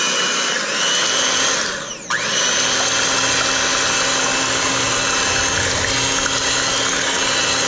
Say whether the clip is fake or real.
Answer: real